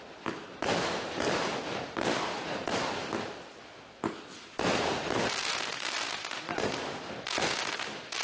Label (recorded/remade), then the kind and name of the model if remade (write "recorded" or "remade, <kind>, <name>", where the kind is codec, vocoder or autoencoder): recorded